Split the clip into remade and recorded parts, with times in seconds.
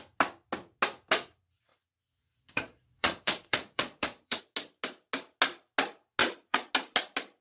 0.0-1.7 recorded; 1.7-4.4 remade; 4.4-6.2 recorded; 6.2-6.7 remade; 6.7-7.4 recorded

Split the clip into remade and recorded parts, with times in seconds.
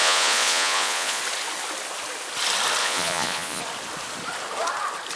0.0-1.2 remade; 1.2-2.8 recorded; 2.8-3.6 remade; 3.6-5.2 recorded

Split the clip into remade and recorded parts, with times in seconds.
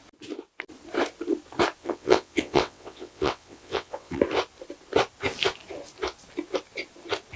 0.0-1.8 recorded; 1.8-4.2 remade; 4.2-7.4 recorded